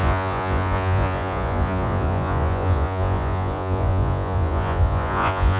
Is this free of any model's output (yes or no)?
no